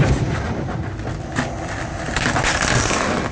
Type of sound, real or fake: fake